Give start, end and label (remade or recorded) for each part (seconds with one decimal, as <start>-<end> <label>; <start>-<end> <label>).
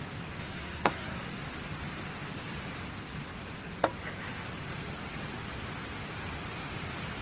0.0-0.4 recorded; 0.4-1.2 remade; 1.2-7.2 recorded